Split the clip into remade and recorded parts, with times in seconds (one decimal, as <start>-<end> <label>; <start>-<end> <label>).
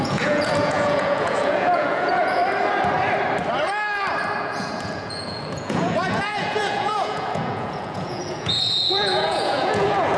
0.0-2.4 remade; 2.4-4.4 recorded; 4.4-10.2 remade